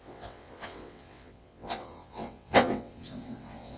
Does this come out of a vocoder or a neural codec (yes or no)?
yes